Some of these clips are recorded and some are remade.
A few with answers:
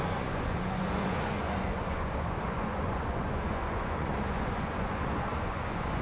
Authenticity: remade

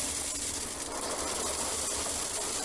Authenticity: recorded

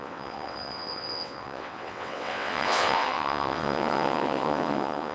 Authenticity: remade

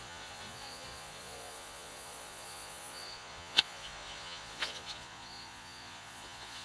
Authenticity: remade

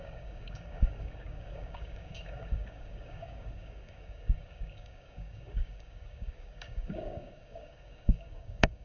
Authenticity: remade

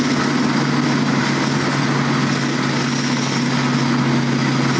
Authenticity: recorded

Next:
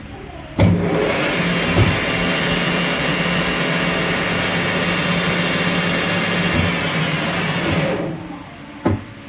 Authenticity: recorded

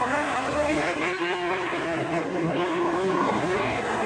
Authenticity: remade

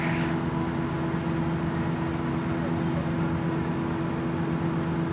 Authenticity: recorded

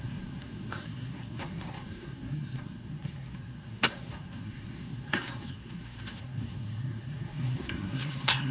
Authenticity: remade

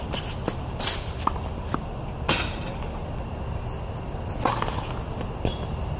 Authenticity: recorded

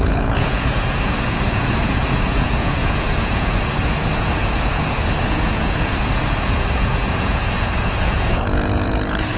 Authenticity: remade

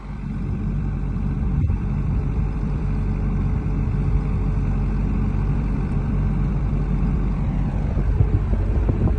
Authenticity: remade